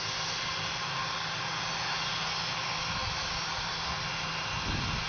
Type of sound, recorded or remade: recorded